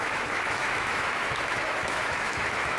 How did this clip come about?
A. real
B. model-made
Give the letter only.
B